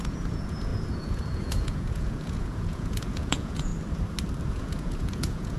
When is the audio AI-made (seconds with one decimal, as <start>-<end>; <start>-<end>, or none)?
0.0-3.7; 4.5-5.6